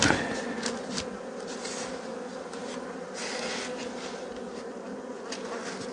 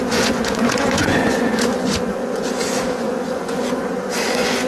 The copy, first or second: second